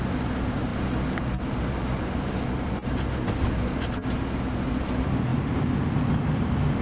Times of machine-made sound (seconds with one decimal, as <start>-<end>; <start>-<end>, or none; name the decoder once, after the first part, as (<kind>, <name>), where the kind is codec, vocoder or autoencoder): none